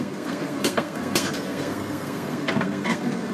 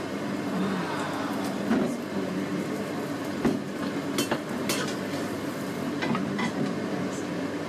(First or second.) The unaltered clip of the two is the second